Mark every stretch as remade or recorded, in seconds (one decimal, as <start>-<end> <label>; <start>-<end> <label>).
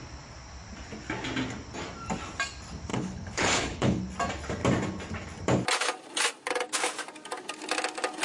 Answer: 0.0-2.9 recorded; 2.9-4.0 remade; 4.0-8.2 recorded